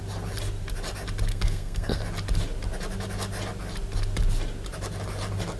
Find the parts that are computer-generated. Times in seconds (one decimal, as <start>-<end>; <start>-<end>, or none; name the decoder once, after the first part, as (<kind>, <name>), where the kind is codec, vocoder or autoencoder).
1.3-2.0 (codec, SNAC)